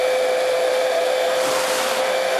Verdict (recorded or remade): recorded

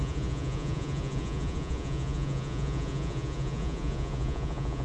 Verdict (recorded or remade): remade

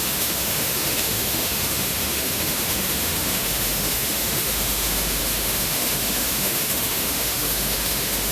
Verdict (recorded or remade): remade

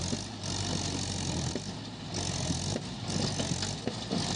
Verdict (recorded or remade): recorded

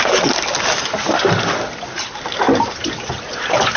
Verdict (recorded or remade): recorded